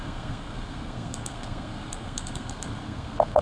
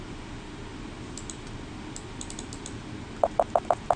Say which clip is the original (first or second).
second